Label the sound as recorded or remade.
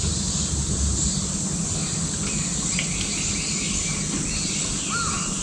recorded